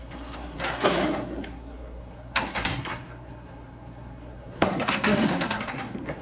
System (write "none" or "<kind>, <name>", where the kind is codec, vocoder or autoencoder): codec, SNAC